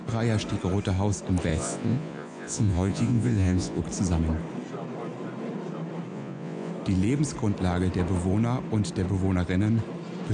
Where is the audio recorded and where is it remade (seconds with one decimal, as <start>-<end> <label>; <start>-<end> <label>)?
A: 0.0-1.5 recorded; 1.5-3.8 remade; 3.8-6.1 recorded; 6.1-6.7 remade; 6.7-10.3 recorded